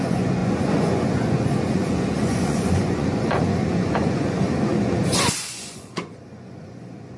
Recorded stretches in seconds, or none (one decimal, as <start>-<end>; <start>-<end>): none